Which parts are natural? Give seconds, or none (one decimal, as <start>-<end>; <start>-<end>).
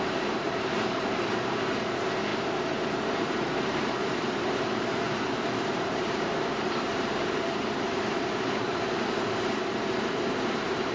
none